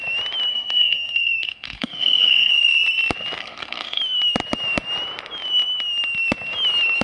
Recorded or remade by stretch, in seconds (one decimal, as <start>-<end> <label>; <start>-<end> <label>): 0.0-0.5 recorded; 0.5-2.5 remade; 2.5-3.4 recorded; 3.4-4.0 remade; 4.0-7.0 recorded